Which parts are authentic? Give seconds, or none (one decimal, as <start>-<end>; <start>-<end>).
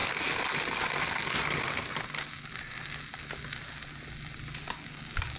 0.0-5.4